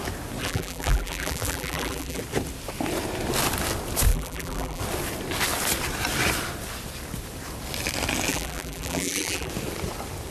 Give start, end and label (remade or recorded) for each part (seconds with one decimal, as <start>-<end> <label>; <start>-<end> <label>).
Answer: 0.0-0.4 recorded; 0.4-2.2 remade; 2.2-4.1 recorded; 4.1-4.8 remade; 4.8-8.3 recorded; 8.3-9.5 remade; 9.5-10.3 recorded